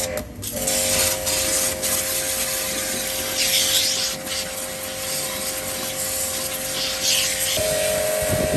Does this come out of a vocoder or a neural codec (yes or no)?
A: no